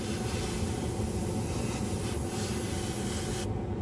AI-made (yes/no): no